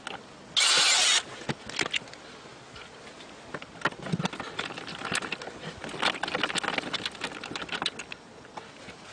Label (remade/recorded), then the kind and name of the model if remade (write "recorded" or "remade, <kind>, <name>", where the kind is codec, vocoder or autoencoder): recorded